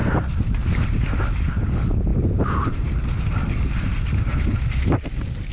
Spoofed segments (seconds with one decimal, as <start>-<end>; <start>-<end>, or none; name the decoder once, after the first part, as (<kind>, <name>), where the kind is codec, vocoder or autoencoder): 0.0-1.2 (vocoder, BigVGAN v2); 2.1-5.5